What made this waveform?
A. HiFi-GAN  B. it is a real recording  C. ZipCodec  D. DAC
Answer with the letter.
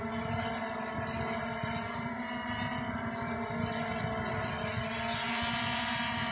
B